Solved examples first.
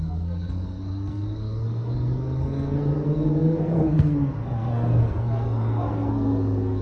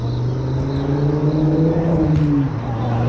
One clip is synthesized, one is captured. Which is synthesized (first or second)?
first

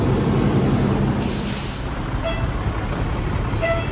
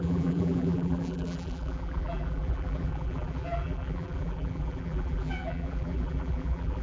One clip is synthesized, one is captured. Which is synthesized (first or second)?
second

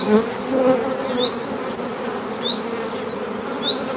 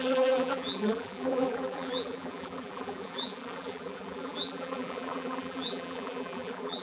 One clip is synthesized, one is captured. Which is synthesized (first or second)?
second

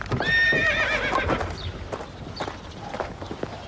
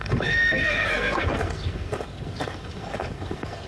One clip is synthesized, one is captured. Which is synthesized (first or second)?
second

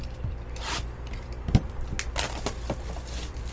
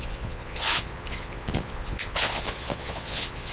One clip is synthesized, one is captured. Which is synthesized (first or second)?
second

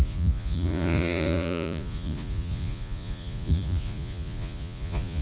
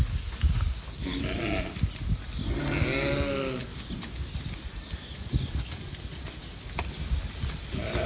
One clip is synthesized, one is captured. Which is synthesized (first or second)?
first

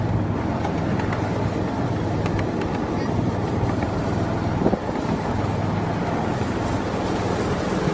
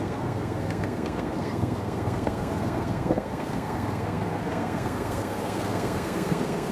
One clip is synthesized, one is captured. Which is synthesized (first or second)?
second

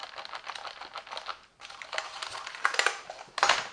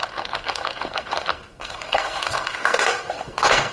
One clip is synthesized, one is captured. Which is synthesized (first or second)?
second